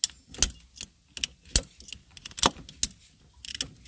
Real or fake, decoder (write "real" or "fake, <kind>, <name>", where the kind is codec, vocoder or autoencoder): real